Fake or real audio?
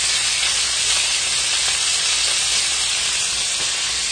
real